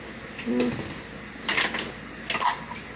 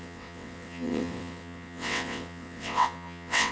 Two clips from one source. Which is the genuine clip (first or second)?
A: first